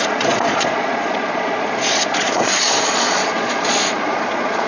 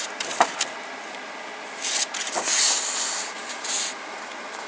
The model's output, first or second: first